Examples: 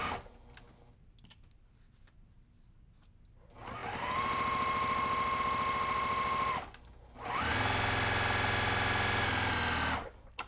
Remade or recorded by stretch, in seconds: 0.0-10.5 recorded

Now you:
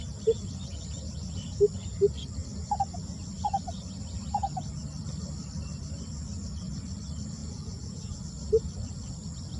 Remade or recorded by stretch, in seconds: 0.0-7.4 recorded; 7.4-8.2 remade; 8.2-9.6 recorded

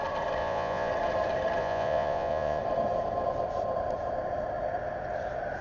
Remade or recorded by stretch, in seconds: 0.0-0.4 recorded; 0.4-0.9 remade; 0.9-1.6 recorded; 1.6-2.6 remade; 2.6-5.6 recorded

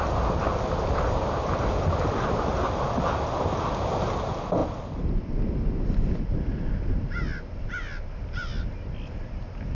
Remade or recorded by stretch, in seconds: 0.0-9.7 recorded

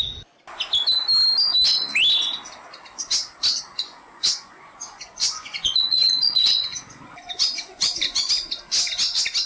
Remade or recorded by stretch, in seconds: 0.0-3.7 recorded; 3.7-8.3 remade; 8.3-9.5 recorded

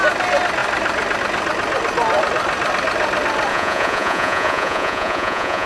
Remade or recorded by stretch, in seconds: 0.0-3.5 recorded; 3.5-5.7 remade